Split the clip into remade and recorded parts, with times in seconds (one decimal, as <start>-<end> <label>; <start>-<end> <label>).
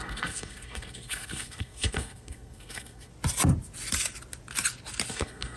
0.0-3.1 remade; 3.1-5.1 recorded; 5.1-5.6 remade